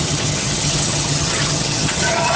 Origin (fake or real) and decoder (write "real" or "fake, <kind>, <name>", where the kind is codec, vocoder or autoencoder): fake, vocoder, HiFi-GAN